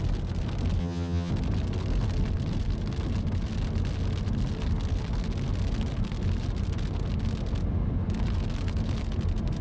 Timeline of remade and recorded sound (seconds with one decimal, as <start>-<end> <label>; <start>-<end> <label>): 0.0-0.8 recorded; 0.8-1.3 remade; 1.3-9.6 recorded